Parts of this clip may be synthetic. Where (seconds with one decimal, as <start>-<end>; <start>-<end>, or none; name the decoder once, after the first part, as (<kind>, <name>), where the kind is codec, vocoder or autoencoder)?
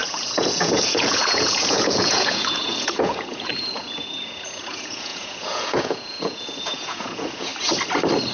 0.0-7.5 (vocoder, Vocos)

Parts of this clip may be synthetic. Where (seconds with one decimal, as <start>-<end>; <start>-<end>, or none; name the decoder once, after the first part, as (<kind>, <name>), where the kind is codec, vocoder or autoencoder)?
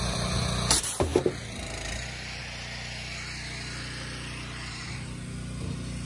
none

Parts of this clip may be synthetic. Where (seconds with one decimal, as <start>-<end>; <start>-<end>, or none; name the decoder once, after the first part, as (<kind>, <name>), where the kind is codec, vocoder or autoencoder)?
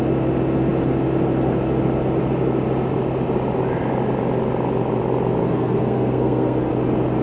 5.4-6.7 (codec, SNAC)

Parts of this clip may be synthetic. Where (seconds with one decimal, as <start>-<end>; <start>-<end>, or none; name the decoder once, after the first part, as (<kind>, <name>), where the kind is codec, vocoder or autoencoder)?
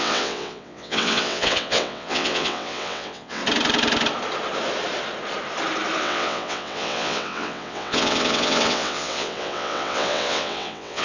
0.0-3.4 (vocoder, WaveNeXt); 6.0-11.0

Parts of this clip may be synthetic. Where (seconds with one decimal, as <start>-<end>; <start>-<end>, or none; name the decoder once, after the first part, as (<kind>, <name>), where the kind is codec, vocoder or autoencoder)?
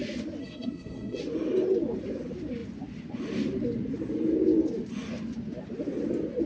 0.4-1.2 (codec, SNAC)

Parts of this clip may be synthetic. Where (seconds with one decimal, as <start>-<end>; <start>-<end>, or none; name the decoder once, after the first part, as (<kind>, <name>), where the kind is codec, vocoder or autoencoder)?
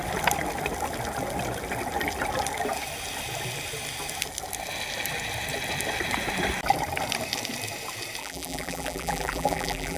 8.2-10.0 (vocoder, BigVGAN v2)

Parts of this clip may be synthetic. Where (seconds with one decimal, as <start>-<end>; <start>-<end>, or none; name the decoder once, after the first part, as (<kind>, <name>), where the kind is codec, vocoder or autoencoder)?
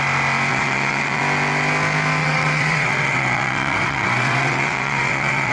0.5-1.2 (vocoder, WaveNeXt); 2.2-5.5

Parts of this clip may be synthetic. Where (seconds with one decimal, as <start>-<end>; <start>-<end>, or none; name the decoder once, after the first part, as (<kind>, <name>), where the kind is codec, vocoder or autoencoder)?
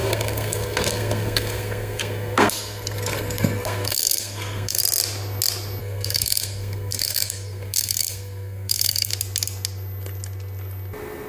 0.0-4.8 (codec, SNAC); 5.8-9.1